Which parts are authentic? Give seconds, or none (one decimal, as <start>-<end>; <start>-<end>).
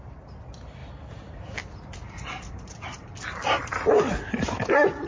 0.0-5.1